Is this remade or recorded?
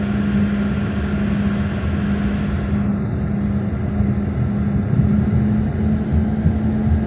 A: recorded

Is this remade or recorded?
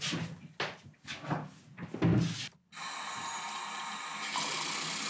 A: recorded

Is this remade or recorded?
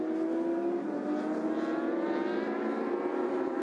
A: recorded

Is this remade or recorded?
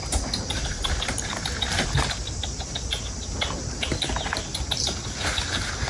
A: recorded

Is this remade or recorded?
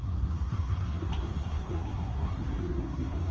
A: remade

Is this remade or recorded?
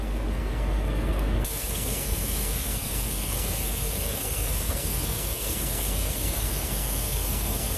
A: remade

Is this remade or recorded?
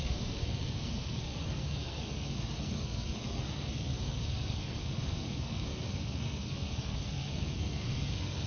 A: remade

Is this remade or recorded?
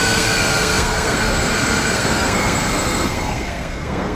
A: remade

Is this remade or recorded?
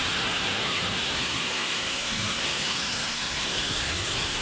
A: remade